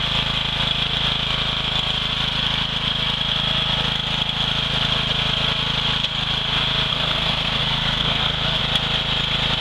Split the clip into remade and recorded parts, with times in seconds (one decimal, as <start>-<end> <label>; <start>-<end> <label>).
0.0-6.9 recorded; 6.9-8.6 remade; 8.6-9.6 recorded